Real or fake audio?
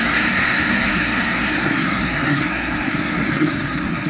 fake